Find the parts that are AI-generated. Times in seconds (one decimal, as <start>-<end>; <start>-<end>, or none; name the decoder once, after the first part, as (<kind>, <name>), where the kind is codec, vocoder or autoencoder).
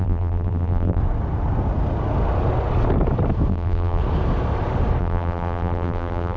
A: 0.0-1.0 (vocoder, BigVGAN v2); 3.5-4.0; 5.0-6.4